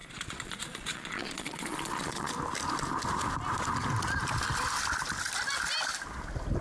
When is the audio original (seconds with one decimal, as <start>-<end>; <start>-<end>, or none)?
2.3-6.6

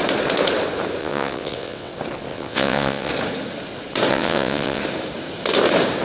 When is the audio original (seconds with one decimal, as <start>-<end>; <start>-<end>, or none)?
0.0-1.0; 1.9-2.3; 3.1-4.1; 4.8-6.0